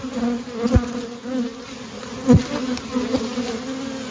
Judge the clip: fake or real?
real